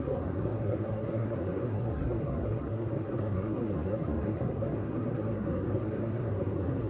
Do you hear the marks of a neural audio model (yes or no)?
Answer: yes